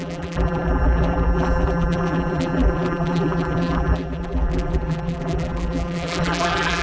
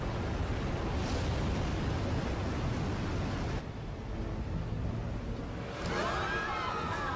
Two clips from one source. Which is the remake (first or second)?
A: first